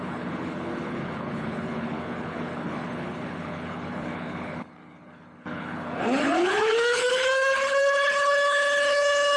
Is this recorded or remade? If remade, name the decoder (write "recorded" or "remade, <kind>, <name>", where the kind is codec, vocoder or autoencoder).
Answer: remade, codec, HILCodec